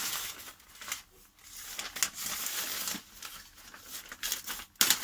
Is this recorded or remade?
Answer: recorded